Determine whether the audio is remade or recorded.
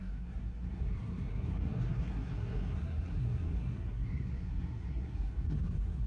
remade